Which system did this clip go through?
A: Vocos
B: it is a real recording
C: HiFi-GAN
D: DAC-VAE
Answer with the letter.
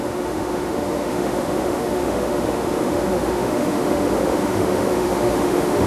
D